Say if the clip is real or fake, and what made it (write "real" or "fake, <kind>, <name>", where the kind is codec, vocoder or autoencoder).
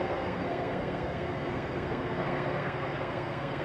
fake, codec, SNAC